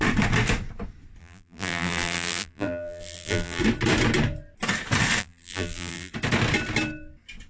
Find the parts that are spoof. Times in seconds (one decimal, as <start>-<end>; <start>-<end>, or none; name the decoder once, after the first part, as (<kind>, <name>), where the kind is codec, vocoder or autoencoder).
1.2-3.6 (vocoder, BigVGAN v2); 5.2-6.1

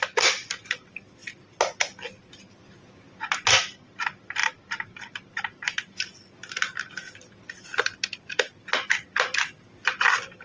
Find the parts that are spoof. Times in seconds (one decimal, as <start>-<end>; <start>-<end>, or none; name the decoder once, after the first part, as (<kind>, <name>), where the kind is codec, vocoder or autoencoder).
4.4-5.9 (vocoder, BigVGAN v2)

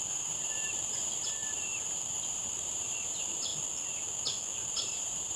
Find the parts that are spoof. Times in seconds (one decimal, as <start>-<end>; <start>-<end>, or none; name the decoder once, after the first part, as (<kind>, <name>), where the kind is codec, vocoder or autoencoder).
0.0-3.5 (vocoder, BigVGAN v2); 4.6-5.4

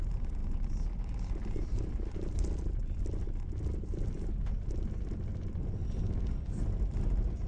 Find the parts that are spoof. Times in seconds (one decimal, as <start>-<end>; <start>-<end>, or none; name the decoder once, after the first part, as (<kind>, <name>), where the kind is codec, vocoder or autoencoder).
0.0-2.8 (vocoder, BigVGAN v2)

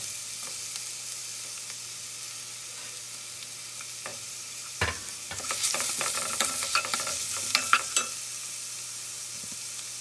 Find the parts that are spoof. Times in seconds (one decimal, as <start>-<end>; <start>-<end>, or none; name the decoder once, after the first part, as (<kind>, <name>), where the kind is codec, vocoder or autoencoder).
4.1-5.9 (vocoder, BigVGAN v2)

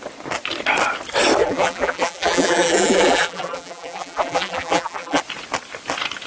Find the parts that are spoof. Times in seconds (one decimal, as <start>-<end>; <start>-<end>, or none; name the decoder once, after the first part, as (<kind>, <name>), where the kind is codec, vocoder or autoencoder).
1.4-5.2 (vocoder, BigVGAN v2)

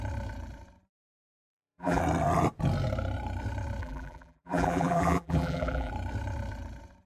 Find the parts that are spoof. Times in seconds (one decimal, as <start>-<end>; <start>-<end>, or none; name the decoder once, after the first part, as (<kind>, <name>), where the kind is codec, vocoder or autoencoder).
1.0-2.0 (vocoder, BigVGAN v2); 3.8-5.9

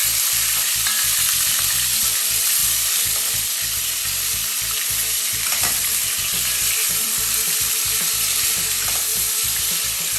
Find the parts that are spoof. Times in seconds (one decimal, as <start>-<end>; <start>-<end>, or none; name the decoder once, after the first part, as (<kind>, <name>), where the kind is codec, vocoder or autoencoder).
2.6-7.7 (vocoder, BigVGAN v2); 9.1-9.7